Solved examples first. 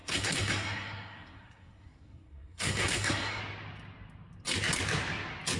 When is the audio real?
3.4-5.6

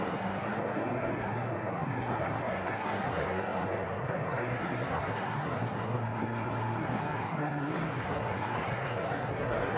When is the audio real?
none

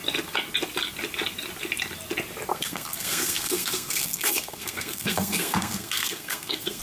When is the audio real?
0.0-2.5